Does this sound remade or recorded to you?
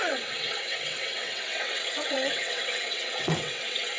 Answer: remade